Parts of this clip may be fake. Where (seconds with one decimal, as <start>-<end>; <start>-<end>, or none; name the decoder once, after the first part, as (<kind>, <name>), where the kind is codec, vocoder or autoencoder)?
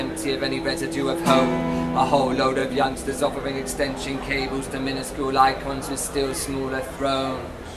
2.6-3.3 (vocoder, BigVGAN v2)